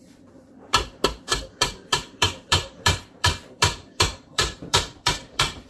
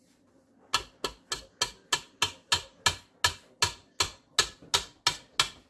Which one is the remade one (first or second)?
first